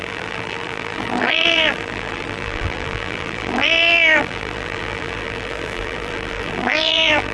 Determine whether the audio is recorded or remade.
remade